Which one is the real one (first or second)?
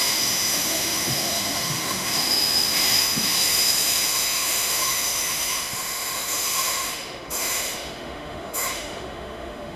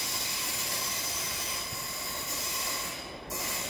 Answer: second